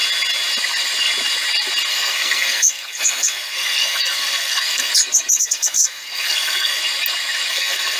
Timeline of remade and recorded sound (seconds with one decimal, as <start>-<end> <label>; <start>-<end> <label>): 0.0-1.9 recorded; 1.9-4.9 remade; 4.9-5.4 recorded; 5.4-6.8 remade; 6.8-7.5 recorded; 7.5-8.0 remade